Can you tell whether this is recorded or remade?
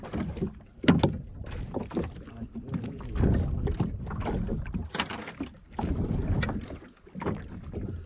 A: recorded